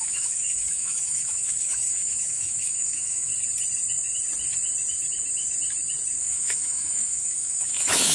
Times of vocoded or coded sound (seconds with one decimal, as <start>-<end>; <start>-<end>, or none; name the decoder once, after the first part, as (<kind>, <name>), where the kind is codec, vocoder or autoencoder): 0.0-3.3 (autoencoder, DAC-VAE); 6.2-8.1

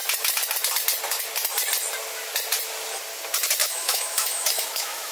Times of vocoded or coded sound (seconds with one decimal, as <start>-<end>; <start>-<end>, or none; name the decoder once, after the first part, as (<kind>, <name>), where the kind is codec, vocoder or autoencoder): 3.6-5.1 (autoencoder, DAC-VAE)

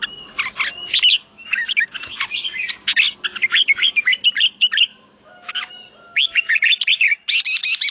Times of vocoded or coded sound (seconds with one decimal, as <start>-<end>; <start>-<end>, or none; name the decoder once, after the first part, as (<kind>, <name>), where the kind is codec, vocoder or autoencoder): 1.3-2.1 (autoencoder, DAC-VAE); 4.9-5.5

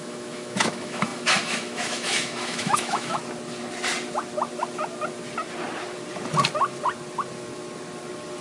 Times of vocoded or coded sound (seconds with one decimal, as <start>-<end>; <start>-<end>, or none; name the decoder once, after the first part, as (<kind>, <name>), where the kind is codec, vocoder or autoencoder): 0.0-3.2 (autoencoder, DAC-VAE)

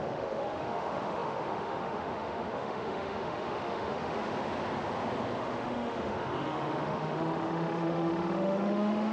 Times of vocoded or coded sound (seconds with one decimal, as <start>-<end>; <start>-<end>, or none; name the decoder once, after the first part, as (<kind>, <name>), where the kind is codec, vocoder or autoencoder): 0.0-4.3 (autoencoder, DAC-VAE); 5.4-9.1

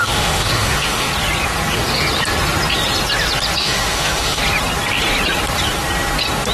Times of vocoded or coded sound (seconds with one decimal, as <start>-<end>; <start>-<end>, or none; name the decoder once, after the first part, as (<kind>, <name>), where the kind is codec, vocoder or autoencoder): 0.0-1.1 (autoencoder, DAC-VAE); 3.6-4.4

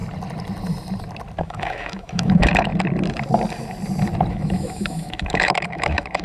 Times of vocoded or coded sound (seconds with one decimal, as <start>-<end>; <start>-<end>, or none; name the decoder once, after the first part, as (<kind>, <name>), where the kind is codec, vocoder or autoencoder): 1.4-2.7 (autoencoder, DAC-VAE); 4.3-6.2